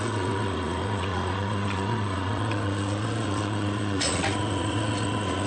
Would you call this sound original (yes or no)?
no